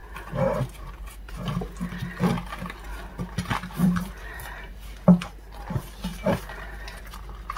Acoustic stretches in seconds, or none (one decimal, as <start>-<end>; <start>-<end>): 0.9-3.8; 4.7-6.1; 7.0-7.6